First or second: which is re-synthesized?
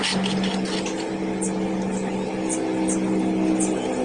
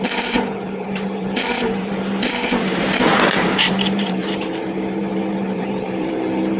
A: second